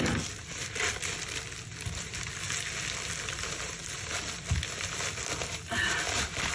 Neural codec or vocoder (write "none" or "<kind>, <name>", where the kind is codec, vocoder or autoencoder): none